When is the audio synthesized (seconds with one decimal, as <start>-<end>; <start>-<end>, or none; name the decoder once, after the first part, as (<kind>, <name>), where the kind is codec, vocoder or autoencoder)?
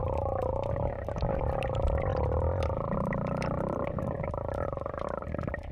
none